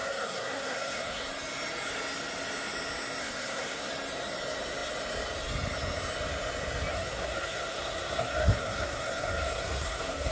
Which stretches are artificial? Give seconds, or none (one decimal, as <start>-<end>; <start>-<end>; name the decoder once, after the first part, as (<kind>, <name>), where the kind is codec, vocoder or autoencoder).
0.0-1.3 (codec, SNAC); 3.2-3.9; 6.9-10.3